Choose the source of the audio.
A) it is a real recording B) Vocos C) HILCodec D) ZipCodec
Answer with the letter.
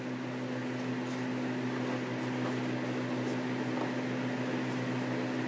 A